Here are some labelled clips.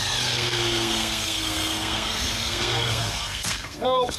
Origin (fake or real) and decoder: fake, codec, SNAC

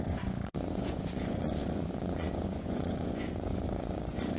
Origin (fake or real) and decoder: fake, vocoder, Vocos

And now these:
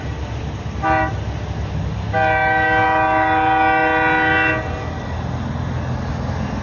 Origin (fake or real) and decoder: real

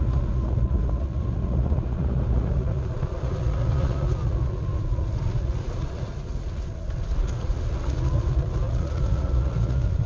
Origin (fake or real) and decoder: fake, vocoder, Vocos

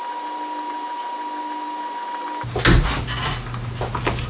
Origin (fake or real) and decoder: real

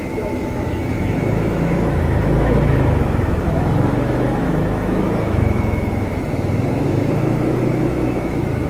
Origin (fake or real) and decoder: fake, autoencoder, DAC-VAE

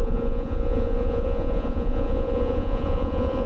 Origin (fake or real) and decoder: fake, vocoder, Vocos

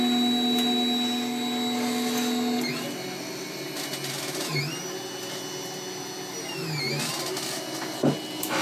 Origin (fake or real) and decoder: real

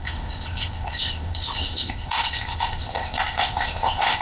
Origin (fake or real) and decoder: fake, codec, ZipCodec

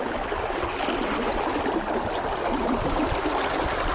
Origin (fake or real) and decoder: real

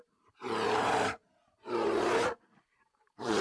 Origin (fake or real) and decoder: fake, vocoder, BigVGAN v2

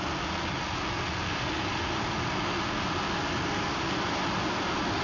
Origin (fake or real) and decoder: real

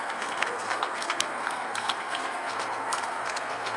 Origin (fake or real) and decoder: fake, codec, SNAC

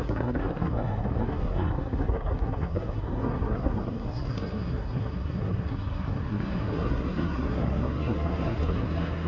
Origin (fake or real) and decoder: fake, codec, SNAC